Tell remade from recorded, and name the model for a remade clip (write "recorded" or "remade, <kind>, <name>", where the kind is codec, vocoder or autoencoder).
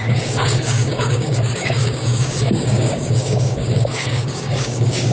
remade, codec, DAC